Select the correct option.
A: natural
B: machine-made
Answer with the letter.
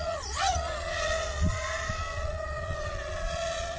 B